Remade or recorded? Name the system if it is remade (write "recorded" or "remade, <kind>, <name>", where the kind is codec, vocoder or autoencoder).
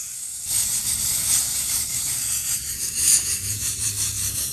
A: remade, codec, DAC